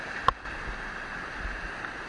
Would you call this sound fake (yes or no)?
no